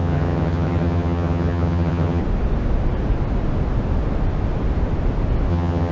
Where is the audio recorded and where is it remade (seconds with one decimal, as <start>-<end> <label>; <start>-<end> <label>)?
0.0-2.2 remade; 2.2-5.5 recorded; 5.5-5.9 remade